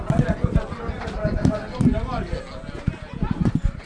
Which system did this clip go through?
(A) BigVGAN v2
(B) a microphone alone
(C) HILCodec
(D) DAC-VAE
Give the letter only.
B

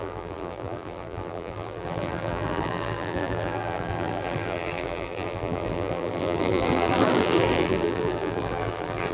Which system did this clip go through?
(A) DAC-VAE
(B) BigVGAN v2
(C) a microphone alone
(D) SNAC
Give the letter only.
B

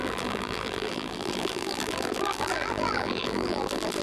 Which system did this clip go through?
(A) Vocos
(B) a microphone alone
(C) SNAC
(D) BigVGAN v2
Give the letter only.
D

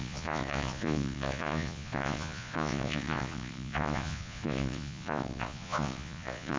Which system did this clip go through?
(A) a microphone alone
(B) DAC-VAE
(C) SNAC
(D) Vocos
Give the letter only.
D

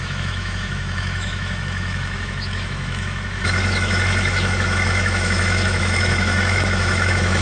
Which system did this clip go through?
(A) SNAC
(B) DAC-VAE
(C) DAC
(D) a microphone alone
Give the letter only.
B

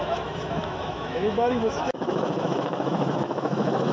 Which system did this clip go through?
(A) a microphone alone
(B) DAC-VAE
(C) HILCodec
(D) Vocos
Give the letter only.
B